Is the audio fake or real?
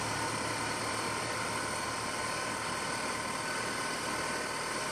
real